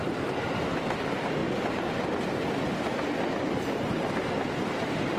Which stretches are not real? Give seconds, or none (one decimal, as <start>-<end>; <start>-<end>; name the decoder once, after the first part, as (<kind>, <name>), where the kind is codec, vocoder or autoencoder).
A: none